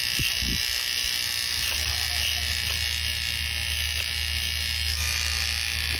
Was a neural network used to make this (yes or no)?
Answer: no